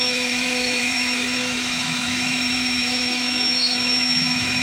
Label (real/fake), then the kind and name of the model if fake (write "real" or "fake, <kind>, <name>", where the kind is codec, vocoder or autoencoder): fake, autoencoder, DAC-VAE